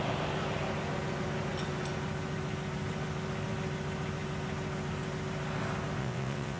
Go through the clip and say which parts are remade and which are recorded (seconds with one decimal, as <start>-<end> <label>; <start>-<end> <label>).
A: 0.0-6.0 recorded; 6.0-6.6 remade